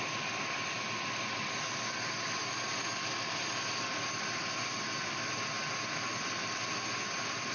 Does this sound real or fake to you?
real